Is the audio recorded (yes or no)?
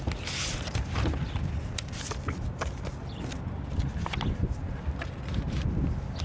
yes